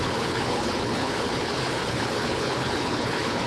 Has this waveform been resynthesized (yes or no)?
yes